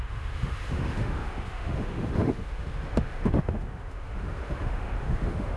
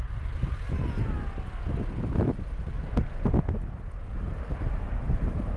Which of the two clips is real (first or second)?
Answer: second